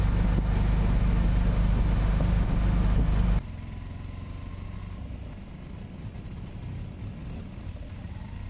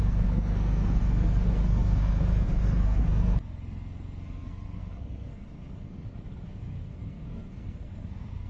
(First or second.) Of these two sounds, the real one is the first